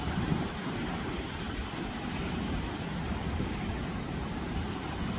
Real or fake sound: fake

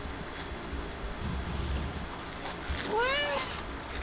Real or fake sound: real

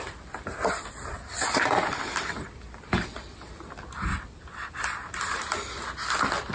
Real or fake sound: fake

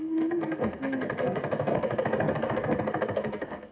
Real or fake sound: fake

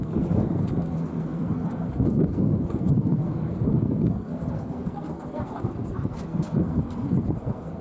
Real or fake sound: fake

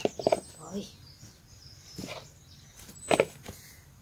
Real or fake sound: real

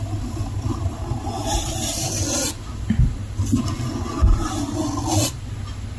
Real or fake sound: real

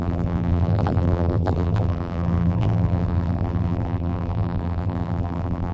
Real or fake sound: fake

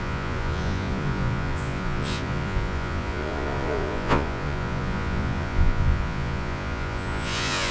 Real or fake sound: fake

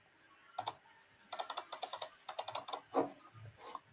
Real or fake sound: real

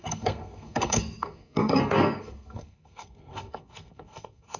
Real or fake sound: fake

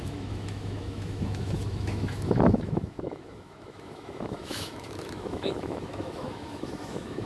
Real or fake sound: fake